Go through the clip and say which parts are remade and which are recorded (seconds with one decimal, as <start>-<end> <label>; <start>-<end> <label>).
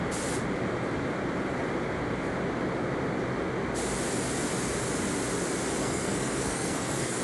0.0-5.8 recorded; 5.8-7.2 remade